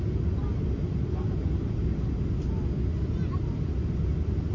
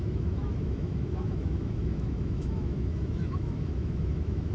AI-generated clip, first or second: second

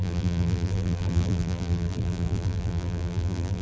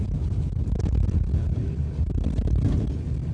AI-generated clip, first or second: first